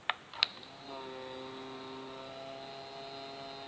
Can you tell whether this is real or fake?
real